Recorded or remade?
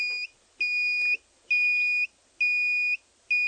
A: recorded